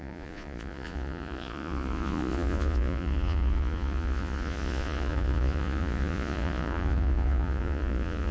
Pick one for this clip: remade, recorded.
remade